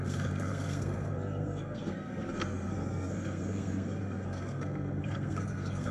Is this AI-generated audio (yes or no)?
yes